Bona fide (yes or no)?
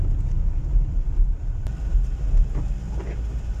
yes